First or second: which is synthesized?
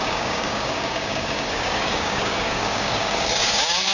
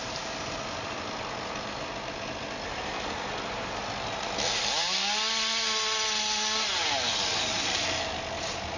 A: first